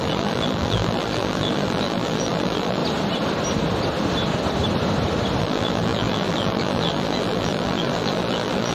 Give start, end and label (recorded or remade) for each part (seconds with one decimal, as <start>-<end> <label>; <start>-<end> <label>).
0.0-2.8 remade; 2.8-5.4 recorded; 5.4-8.7 remade